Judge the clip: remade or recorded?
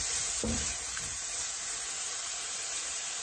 remade